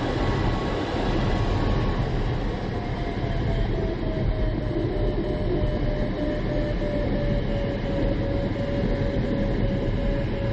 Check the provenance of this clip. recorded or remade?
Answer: recorded